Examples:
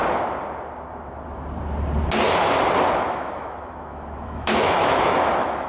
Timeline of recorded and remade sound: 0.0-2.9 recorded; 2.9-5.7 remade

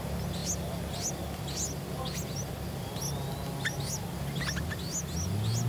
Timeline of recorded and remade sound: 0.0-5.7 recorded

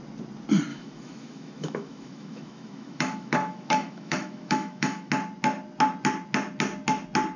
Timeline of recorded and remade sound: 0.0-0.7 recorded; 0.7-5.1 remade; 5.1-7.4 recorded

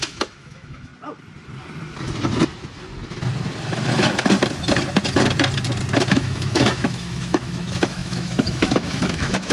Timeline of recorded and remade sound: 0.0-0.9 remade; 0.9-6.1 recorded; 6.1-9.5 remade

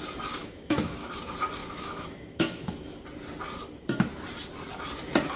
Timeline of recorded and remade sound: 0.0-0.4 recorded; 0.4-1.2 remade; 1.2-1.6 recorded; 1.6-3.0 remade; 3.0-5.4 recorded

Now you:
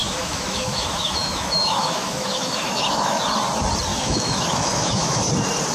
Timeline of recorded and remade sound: 0.0-3.2 remade; 3.2-3.9 recorded; 3.9-5.3 remade; 5.3-5.7 recorded

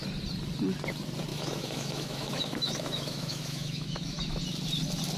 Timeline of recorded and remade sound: 0.0-1.3 recorded; 1.3-4.4 remade; 4.4-5.2 recorded

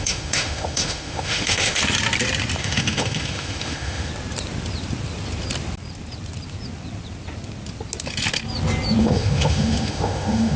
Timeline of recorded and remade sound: 0.0-1.8 remade; 1.8-2.6 recorded; 2.6-4.1 remade; 4.1-9.0 recorded; 9.0-10.6 remade